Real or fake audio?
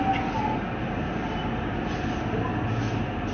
real